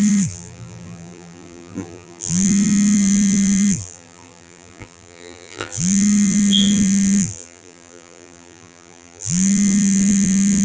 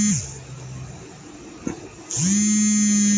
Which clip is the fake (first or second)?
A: first